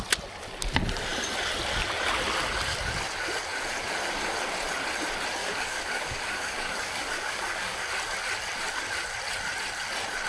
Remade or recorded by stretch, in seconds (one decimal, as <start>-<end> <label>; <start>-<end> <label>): 0.0-5.4 recorded; 5.4-7.9 remade; 7.9-10.3 recorded